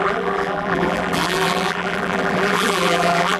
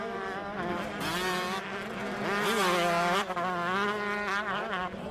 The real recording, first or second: second